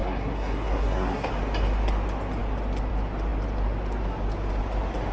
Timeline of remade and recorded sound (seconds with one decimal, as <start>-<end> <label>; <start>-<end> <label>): 0.0-1.3 remade; 1.3-5.1 recorded